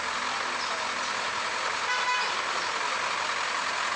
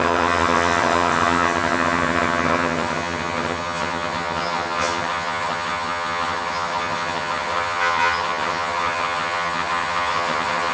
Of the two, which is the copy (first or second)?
second